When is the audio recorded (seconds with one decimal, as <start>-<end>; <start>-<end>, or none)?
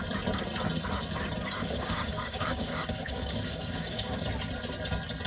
0.0-1.6; 4.2-5.3